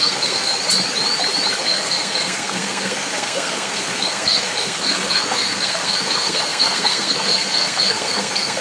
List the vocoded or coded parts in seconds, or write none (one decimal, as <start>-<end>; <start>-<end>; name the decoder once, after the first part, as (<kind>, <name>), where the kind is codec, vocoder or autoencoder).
0.0-0.5 (codec, SNAC); 1.6-8.6